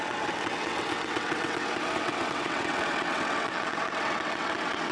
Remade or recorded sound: remade